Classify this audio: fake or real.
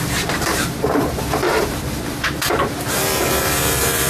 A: fake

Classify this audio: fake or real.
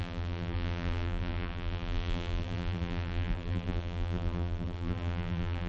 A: fake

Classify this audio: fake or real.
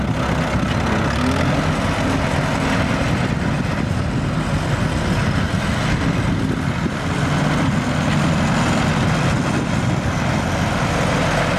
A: real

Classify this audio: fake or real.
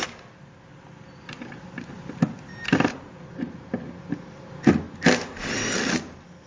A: real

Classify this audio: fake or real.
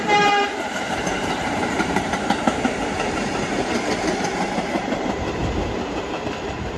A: fake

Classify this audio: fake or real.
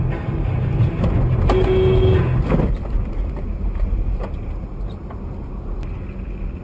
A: real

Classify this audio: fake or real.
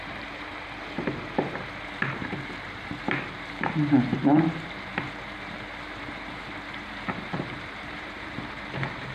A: fake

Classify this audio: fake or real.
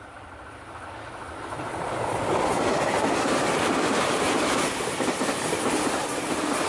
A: fake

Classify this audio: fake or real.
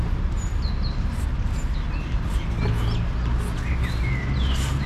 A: real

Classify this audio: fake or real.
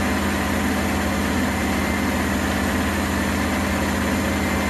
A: real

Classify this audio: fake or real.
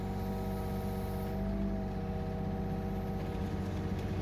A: real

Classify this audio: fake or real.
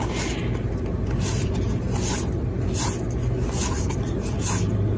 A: real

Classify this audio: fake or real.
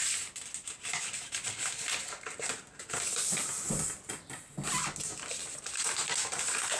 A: real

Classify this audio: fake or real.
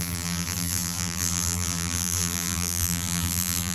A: fake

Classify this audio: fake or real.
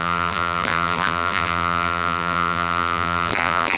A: fake